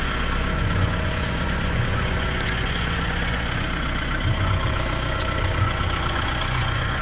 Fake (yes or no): yes